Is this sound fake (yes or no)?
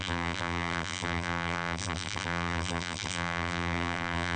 yes